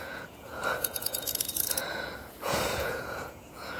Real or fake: fake